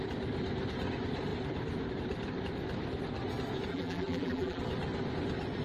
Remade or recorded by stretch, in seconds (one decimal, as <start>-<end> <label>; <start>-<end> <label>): 0.0-3.7 recorded; 3.7-4.6 remade; 4.6-5.6 recorded